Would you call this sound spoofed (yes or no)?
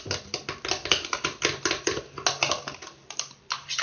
no